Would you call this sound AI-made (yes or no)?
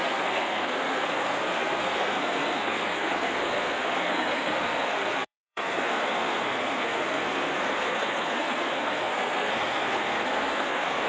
yes